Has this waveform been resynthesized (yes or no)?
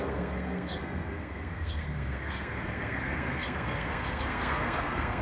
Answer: yes